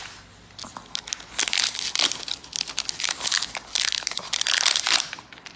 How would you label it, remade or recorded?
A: recorded